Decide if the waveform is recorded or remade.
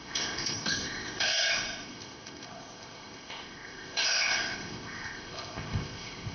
remade